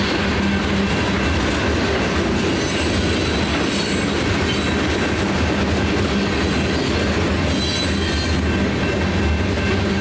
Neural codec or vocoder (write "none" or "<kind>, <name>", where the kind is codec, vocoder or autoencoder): none